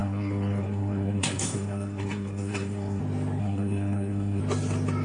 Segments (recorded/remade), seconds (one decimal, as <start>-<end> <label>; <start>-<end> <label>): 0.0-3.0 remade; 3.0-3.4 recorded; 3.4-4.4 remade; 4.4-5.0 recorded